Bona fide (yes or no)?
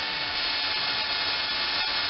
yes